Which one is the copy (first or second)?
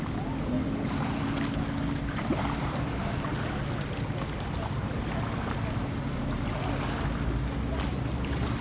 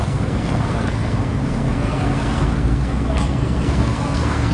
second